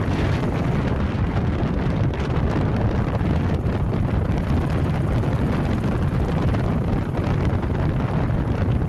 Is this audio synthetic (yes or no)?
yes